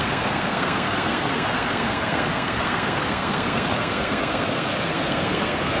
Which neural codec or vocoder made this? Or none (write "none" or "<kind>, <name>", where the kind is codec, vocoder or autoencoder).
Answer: codec, SNAC